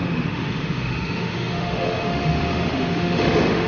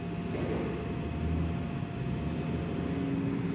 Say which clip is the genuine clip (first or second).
second